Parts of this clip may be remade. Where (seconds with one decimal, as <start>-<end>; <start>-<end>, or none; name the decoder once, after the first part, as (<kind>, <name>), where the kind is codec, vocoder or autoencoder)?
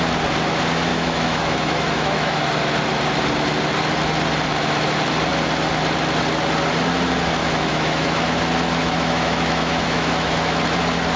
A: 0.9-2.4 (autoencoder, DAC-VAE); 7.4-8.4; 8.8-10.6